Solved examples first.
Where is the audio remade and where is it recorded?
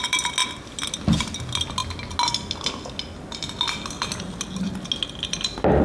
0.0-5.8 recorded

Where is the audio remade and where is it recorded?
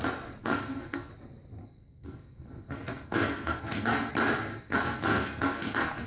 0.0-0.4 recorded; 0.4-1.1 remade; 1.1-1.6 recorded; 1.6-4.1 remade; 4.1-4.5 recorded; 4.5-6.1 remade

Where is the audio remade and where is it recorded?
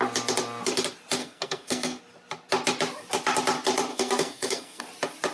0.0-1.2 recorded; 1.2-2.0 remade; 2.0-3.9 recorded; 3.9-4.8 remade; 4.8-5.3 recorded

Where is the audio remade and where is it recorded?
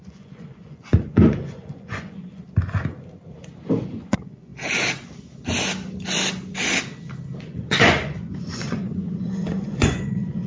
0.0-2.4 remade; 2.4-3.9 recorded; 3.9-4.5 remade; 4.5-7.4 recorded; 7.4-10.5 remade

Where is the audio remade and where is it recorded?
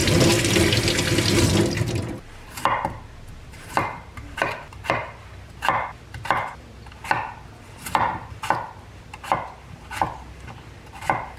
0.0-11.4 recorded